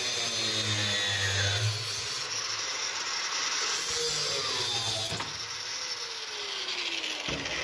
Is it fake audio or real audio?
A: real